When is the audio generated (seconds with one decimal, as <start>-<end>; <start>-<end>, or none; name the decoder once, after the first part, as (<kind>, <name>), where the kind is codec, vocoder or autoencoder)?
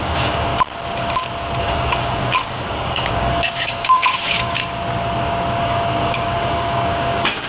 0.0-0.5 (codec, DAC); 1.6-4.6; 5.6-7.5